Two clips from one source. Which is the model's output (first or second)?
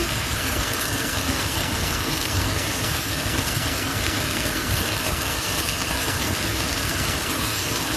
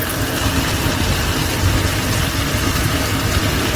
first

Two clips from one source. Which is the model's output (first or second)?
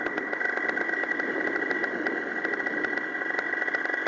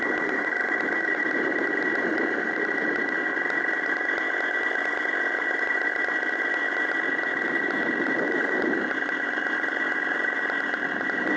second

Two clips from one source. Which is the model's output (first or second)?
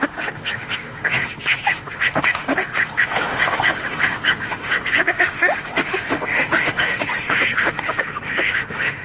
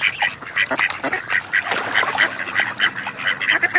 first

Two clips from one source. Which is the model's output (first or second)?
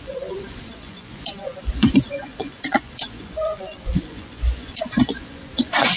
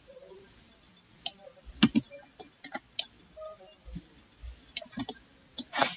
first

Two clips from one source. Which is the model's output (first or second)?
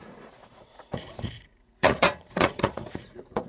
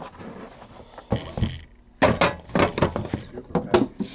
first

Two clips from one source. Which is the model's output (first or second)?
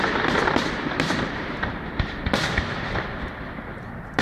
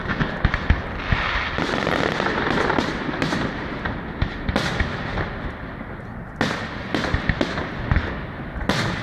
first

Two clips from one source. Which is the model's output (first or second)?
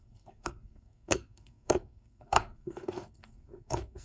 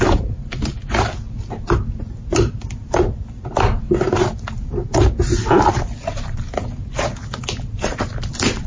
first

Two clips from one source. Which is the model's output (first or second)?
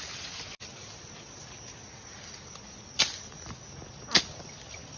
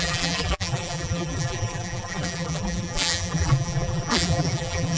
second